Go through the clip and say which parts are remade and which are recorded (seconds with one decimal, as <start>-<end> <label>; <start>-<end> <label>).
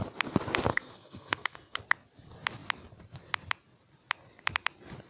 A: 0.0-0.7 recorded; 0.7-1.8 remade; 1.8-5.1 recorded